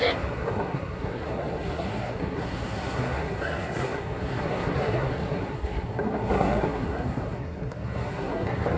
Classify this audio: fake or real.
fake